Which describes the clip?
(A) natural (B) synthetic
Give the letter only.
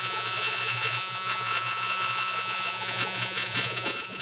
B